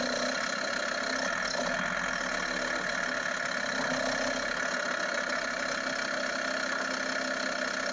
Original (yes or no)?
yes